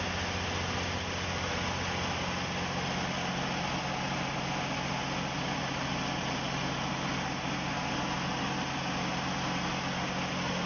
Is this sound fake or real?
real